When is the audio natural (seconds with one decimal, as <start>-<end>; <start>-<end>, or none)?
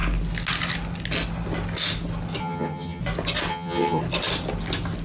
0.0-2.4; 3.0-3.5; 4.0-5.0